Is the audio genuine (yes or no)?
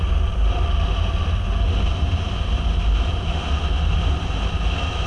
yes